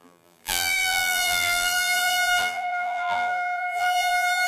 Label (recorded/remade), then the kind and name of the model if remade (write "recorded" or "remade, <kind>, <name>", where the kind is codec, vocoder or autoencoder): remade, vocoder, BigVGAN v2